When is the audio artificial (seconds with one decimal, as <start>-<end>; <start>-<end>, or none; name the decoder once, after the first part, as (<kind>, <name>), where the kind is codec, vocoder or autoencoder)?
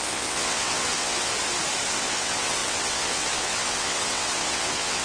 0.0-1.3 (vocoder, WaveNeXt); 1.9-5.0